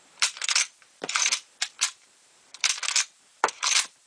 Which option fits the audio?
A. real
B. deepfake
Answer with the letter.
B